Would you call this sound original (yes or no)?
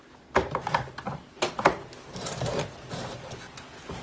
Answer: yes